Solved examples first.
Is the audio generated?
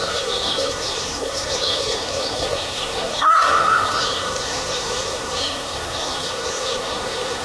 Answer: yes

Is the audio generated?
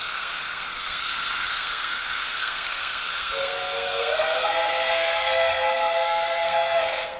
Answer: yes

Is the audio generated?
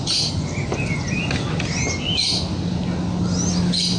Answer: no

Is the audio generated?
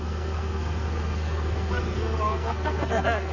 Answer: yes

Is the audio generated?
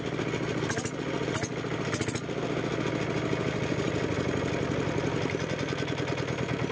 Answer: no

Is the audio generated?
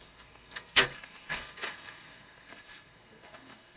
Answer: yes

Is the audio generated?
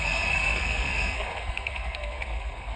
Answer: yes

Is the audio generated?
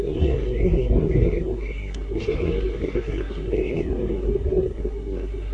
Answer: yes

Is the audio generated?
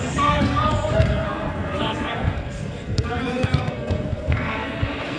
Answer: yes